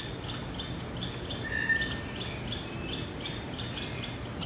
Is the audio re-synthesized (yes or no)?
no